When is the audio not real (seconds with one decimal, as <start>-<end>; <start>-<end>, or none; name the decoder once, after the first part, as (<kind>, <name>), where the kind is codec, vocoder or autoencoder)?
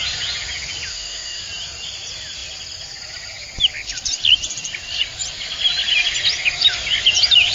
0.9-1.4 (autoencoder, DAC-VAE)